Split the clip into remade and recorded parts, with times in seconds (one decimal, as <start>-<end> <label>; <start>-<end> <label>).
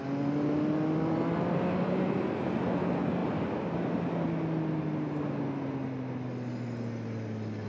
0.0-7.7 recorded